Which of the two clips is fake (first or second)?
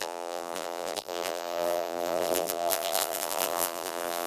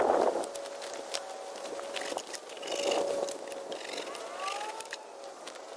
first